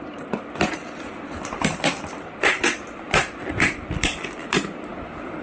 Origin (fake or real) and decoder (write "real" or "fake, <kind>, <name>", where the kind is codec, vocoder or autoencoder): fake, vocoder, BigVGAN v2